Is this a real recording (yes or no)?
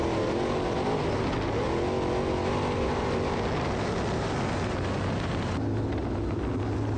yes